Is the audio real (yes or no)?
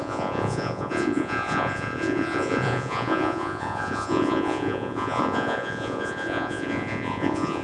no